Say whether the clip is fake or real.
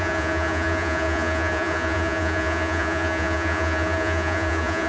fake